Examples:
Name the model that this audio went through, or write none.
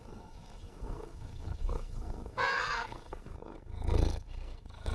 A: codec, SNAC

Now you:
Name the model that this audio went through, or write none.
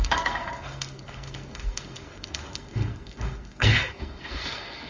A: codec, SNAC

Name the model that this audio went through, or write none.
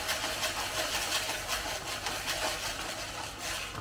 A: none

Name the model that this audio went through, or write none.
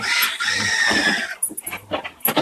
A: none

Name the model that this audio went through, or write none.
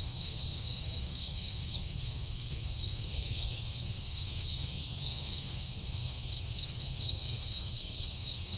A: codec, SNAC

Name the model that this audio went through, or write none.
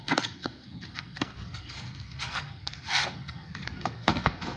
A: codec, SNAC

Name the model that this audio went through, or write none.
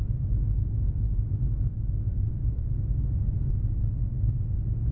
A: none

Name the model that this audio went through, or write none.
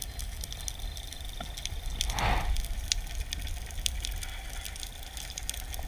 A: none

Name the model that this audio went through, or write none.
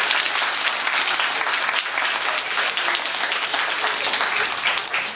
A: none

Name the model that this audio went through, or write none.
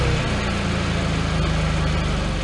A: none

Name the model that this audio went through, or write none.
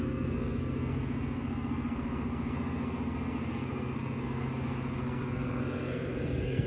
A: codec, SNAC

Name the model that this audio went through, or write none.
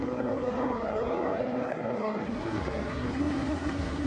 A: codec, SNAC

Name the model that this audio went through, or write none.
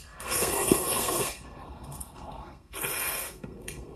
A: codec, SNAC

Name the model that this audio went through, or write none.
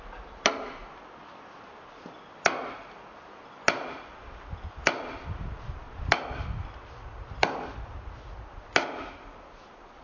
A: none